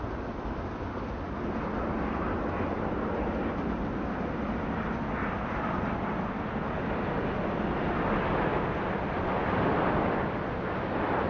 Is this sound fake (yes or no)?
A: no